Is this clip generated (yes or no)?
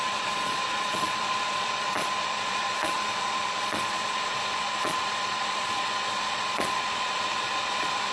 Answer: yes